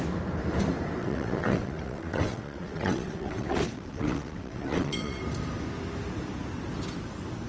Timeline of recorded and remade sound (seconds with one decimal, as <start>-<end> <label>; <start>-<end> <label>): 0.0-1.0 recorded; 1.0-5.2 remade; 5.2-7.5 recorded